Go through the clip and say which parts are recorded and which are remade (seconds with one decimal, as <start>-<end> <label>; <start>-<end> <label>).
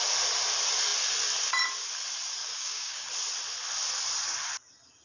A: 0.0-2.4 recorded; 2.4-3.1 remade; 3.1-5.0 recorded